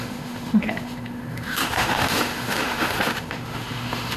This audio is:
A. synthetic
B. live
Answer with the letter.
A